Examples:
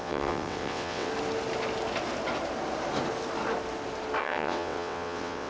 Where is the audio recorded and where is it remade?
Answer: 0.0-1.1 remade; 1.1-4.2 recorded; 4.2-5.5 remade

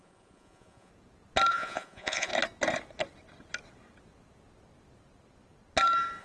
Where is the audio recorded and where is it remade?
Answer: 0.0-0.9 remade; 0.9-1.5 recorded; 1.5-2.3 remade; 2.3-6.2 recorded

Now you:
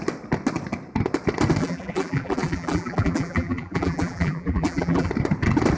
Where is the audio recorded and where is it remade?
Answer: 0.0-1.6 recorded; 1.6-5.1 remade; 5.1-5.8 recorded

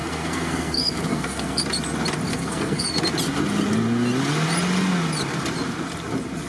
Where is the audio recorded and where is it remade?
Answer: 0.0-1.6 remade; 1.6-2.3 recorded; 2.3-2.9 remade; 2.9-6.5 recorded

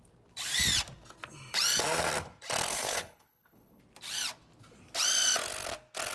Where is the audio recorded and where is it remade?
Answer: 0.0-2.7 recorded; 2.7-3.8 remade; 3.8-6.1 recorded

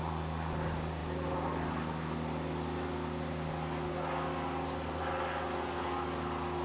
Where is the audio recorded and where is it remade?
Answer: 0.0-6.6 recorded

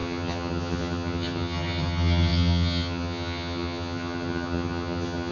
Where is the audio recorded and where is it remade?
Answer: 0.0-5.3 remade

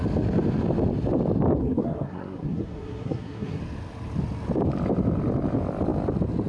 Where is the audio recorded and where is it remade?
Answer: 0.0-1.6 recorded; 1.6-3.6 remade; 3.6-6.5 recorded